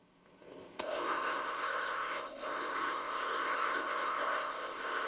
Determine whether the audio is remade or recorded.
remade